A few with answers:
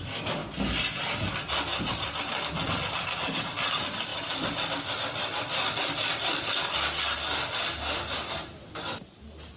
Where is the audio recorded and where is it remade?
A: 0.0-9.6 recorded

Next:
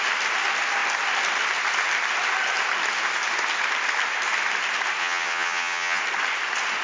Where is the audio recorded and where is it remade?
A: 0.0-5.0 recorded; 5.0-6.0 remade; 6.0-6.8 recorded

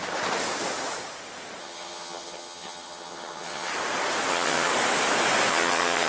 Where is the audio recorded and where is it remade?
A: 0.0-1.6 recorded; 1.6-3.7 remade; 3.7-4.3 recorded; 4.3-4.7 remade; 4.7-5.5 recorded; 5.5-6.1 remade